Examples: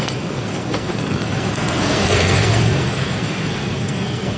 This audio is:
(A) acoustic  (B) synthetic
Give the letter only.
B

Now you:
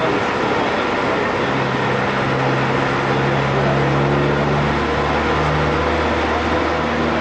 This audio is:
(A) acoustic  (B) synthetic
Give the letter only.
A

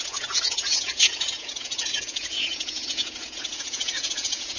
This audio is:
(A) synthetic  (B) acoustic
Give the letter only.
A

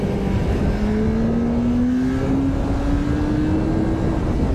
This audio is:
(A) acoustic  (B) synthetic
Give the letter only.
A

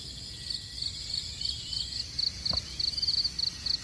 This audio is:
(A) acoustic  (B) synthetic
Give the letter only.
A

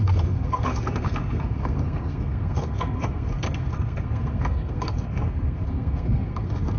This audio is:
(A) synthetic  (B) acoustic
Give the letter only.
A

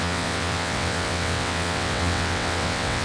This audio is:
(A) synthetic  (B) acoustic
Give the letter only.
A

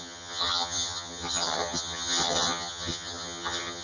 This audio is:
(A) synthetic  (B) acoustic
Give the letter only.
A